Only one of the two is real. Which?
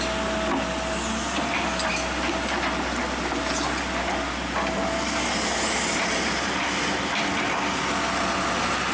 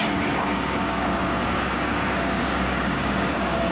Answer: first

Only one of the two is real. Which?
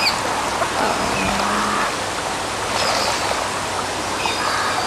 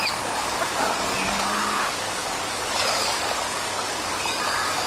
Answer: first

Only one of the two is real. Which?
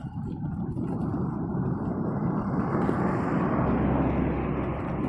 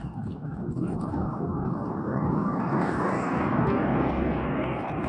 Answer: first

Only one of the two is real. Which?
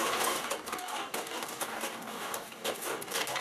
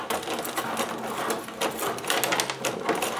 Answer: second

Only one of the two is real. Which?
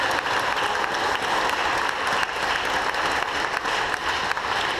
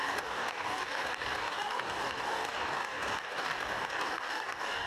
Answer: first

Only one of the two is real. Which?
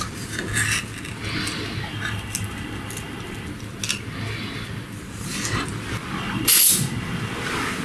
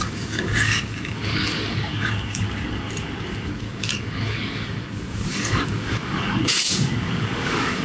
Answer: first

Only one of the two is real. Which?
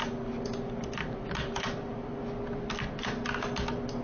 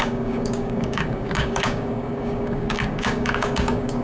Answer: first